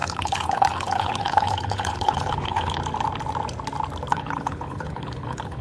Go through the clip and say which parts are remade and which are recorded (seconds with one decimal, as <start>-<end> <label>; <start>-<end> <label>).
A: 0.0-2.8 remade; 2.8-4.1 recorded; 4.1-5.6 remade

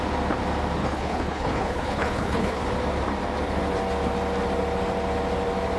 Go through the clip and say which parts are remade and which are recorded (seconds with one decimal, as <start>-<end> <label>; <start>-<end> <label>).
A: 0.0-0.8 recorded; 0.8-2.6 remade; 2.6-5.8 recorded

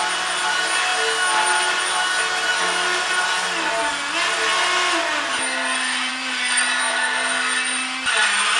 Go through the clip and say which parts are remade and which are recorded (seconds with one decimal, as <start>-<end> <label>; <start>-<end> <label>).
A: 0.0-8.6 recorded

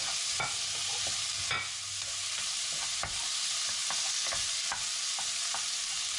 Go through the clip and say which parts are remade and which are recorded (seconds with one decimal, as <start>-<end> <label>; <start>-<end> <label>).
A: 0.0-6.2 recorded

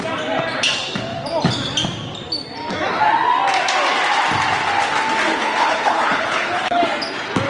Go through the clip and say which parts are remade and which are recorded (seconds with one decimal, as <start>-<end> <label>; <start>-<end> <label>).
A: 0.0-5.3 recorded; 5.3-6.8 remade; 6.8-7.5 recorded

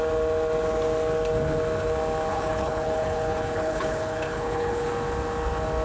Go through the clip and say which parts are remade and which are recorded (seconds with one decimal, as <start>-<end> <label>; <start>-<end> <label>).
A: 0.0-2.3 recorded; 2.3-4.9 remade; 4.9-5.8 recorded